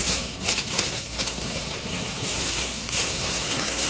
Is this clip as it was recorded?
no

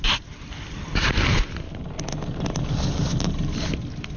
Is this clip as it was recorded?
yes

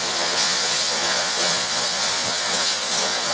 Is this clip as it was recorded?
no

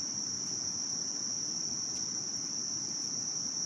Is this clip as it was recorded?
yes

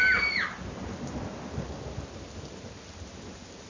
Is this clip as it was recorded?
yes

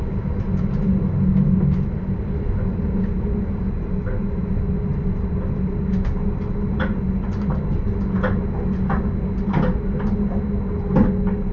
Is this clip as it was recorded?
yes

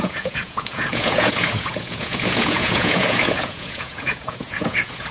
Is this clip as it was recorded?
no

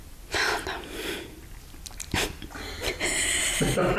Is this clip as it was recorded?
yes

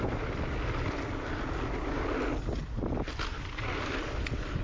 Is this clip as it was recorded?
yes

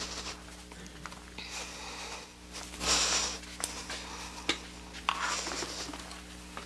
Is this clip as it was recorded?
yes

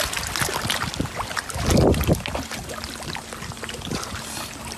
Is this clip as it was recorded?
yes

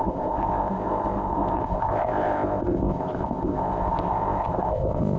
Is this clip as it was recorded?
no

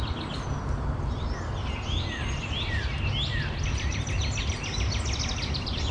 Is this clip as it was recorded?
yes